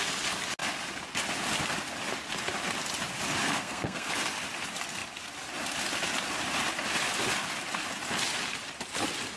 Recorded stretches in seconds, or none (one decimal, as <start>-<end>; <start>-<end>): 0.0-3.4; 4.1-9.4